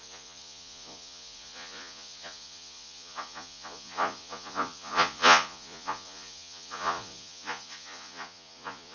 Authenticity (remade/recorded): remade